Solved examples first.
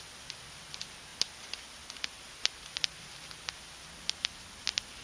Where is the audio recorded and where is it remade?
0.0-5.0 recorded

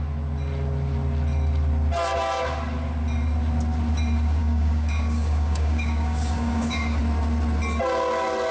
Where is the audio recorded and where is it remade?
0.0-4.4 recorded; 4.4-7.0 remade; 7.0-8.5 recorded

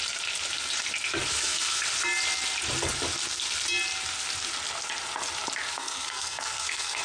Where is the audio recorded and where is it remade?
0.0-1.3 recorded; 1.3-1.8 remade; 1.8-5.7 recorded; 5.7-7.0 remade